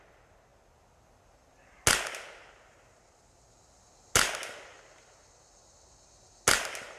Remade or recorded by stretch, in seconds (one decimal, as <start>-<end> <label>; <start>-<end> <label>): 0.0-7.0 recorded